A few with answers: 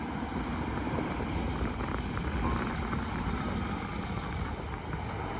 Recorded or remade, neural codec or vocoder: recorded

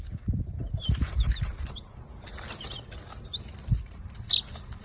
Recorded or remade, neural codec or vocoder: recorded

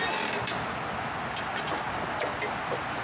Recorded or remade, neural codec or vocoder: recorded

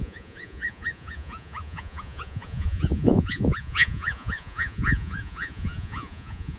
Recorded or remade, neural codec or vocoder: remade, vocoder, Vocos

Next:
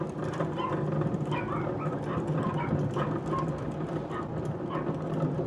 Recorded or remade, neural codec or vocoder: recorded